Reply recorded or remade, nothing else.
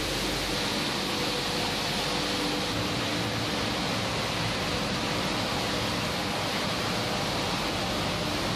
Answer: recorded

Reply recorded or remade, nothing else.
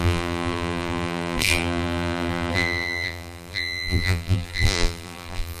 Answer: remade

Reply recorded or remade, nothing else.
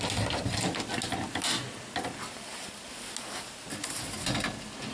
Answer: recorded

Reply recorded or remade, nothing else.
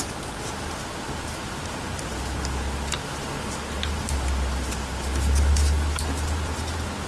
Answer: recorded